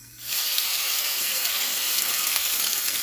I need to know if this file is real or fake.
fake